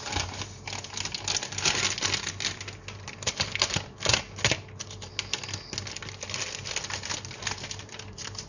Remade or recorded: recorded